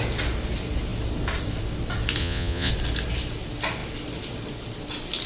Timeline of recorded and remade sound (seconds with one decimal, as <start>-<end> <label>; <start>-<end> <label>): 0.0-2.2 recorded; 2.2-2.7 remade; 2.7-5.3 recorded